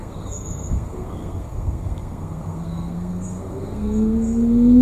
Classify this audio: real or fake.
fake